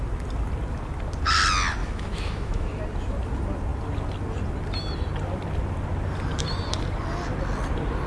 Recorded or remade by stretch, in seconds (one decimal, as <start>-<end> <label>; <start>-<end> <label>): 0.0-1.8 recorded; 1.8-2.8 remade; 2.8-8.1 recorded